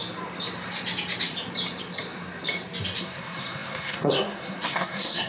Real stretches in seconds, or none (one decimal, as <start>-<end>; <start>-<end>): 0.0-3.0